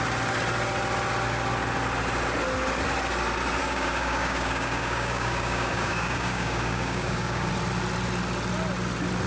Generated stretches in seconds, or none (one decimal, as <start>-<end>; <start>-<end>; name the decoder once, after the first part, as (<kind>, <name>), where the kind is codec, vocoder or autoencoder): 3.6-7.5 (codec, DAC)